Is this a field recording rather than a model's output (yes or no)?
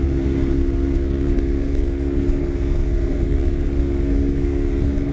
no